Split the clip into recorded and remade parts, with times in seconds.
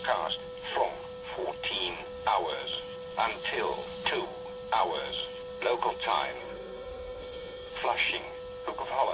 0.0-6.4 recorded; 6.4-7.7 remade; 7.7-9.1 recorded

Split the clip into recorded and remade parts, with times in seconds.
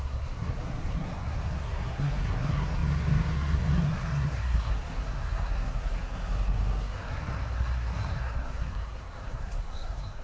0.0-10.2 remade